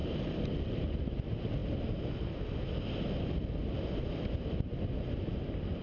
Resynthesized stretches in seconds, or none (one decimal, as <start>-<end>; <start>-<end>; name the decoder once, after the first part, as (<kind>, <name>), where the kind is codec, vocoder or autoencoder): 0.0-0.9 (vocoder, BigVGAN v2)